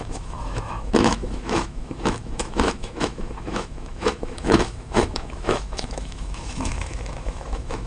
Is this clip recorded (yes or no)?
no